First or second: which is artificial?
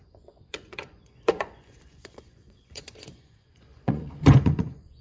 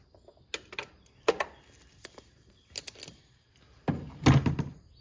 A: first